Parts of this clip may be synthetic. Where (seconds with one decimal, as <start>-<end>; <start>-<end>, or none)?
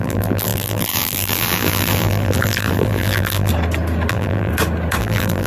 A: 0.0-3.5; 4.1-4.5; 5.0-5.5